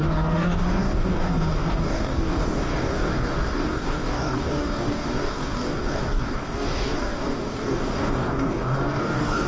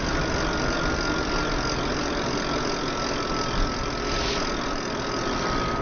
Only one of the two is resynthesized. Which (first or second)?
first